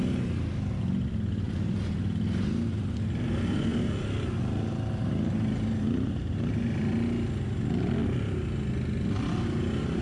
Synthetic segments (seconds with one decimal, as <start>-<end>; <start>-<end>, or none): none

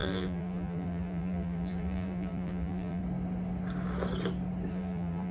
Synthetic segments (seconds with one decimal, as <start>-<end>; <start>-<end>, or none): 0.0-3.0; 4.7-5.3

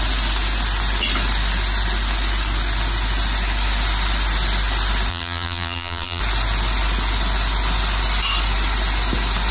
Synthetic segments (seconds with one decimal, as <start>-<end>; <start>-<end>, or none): 5.1-6.2

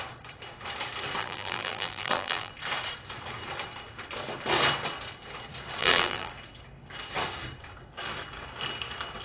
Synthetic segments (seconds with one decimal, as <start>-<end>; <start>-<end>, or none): 1.2-2.5; 5.8-6.3

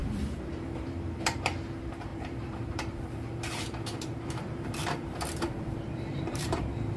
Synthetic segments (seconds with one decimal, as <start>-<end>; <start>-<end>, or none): 0.0-7.0